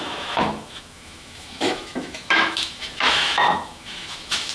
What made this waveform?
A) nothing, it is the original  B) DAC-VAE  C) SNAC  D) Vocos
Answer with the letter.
B